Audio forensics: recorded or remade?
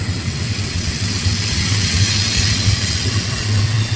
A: remade